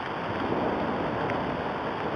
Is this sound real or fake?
real